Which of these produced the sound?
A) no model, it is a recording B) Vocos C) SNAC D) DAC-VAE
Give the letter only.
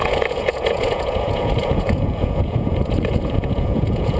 B